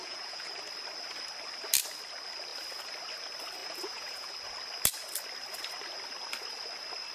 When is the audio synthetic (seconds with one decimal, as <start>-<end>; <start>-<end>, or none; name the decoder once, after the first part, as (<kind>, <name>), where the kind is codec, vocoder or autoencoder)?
0.0-0.5 (vocoder, Vocos); 3.6-4.3